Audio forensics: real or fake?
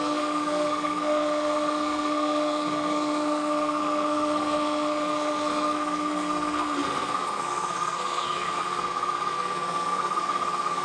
fake